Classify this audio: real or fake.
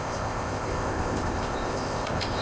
fake